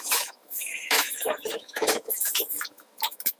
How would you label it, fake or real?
fake